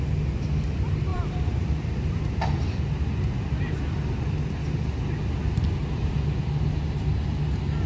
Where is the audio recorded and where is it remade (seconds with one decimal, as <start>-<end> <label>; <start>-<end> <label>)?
0.0-1.1 recorded; 1.1-4.2 remade; 4.2-7.9 recorded